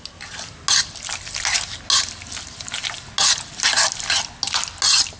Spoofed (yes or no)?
no